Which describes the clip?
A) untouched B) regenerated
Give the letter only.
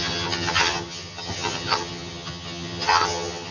B